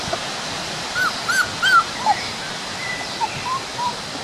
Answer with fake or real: real